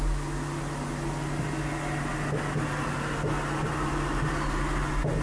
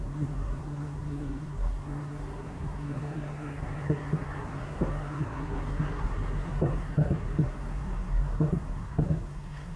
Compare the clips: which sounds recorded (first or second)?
first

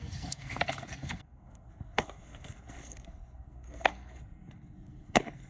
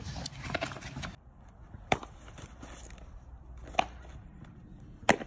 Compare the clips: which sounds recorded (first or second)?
second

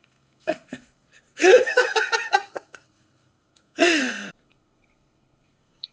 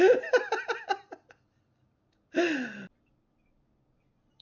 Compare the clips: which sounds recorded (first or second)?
second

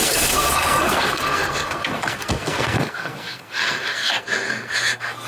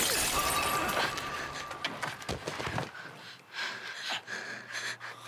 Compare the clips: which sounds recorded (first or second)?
second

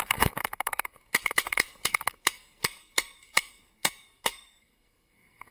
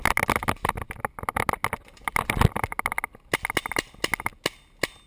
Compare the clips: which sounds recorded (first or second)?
second